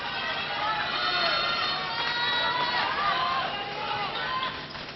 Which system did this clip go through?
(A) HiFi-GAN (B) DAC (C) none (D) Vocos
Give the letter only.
C